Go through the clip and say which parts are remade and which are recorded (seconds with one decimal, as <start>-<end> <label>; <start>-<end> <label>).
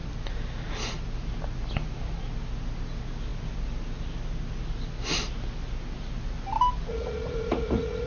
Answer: 0.0-6.9 recorded; 6.9-8.1 remade